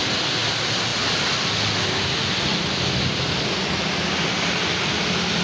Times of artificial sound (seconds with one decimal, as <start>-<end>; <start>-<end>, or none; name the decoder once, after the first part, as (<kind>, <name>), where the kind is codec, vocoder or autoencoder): none